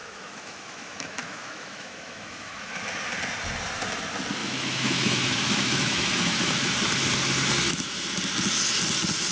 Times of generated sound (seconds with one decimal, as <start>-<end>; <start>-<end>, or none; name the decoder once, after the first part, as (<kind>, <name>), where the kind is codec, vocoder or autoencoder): 0.0-2.7 (autoencoder, DAC-VAE); 4.4-6.7